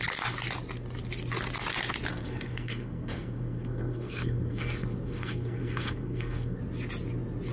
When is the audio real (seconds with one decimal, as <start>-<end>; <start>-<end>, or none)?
0.0-2.1; 6.6-7.5